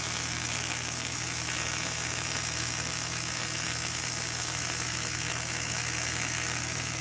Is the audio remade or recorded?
remade